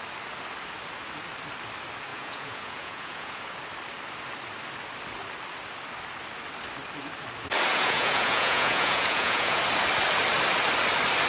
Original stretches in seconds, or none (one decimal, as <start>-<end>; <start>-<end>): 0.0-2.1; 3.4-7.7; 9.6-11.3